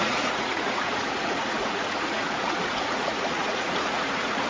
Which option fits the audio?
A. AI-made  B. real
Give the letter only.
A